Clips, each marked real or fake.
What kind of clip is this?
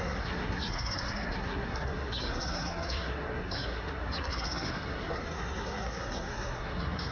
fake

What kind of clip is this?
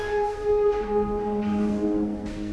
fake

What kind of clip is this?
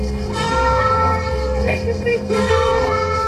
fake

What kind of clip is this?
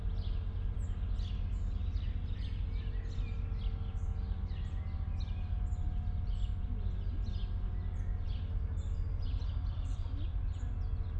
real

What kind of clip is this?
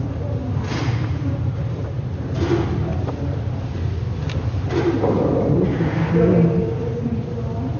real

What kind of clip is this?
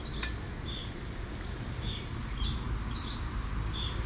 fake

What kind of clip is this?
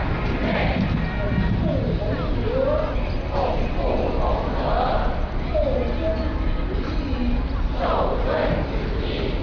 real